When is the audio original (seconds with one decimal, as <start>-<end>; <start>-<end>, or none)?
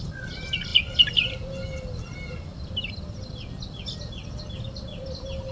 0.0-5.5